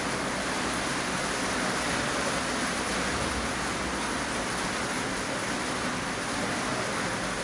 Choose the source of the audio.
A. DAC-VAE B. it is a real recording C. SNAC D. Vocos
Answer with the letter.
B